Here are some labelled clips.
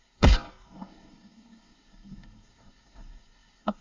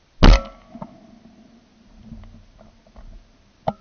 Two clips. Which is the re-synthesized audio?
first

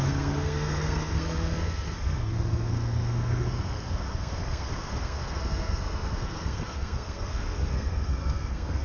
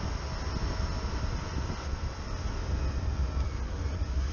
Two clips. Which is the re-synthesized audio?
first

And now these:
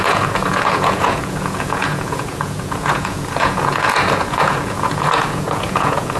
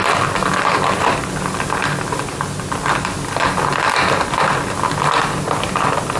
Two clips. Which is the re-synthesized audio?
first